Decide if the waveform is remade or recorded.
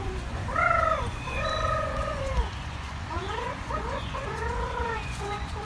remade